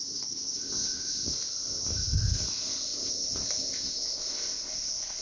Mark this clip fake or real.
fake